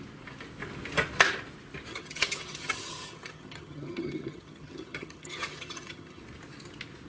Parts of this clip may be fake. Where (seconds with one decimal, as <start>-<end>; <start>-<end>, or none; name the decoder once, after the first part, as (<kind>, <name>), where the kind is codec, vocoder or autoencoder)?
1.9-6.2 (vocoder, HiFi-GAN)